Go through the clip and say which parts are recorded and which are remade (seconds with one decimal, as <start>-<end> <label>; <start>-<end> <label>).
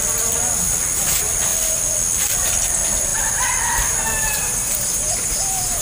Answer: 0.0-4.4 recorded; 4.4-5.8 remade